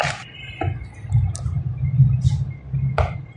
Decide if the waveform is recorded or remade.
recorded